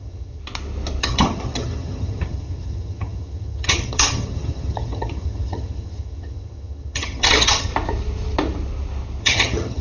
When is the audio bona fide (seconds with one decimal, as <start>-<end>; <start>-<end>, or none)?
0.4-1.0; 7.7-9.2